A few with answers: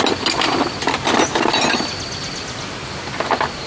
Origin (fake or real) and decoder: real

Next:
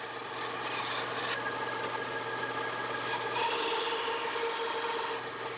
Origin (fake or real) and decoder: real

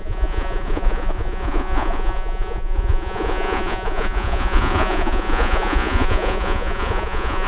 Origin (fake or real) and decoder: fake, vocoder, Vocos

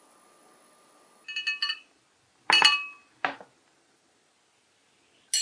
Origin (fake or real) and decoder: real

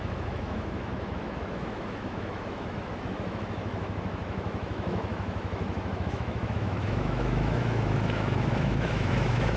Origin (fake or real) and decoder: fake, autoencoder, DAC-VAE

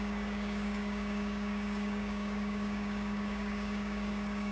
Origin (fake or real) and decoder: fake, codec, DAC